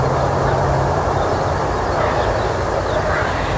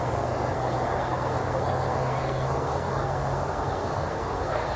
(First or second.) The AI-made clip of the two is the second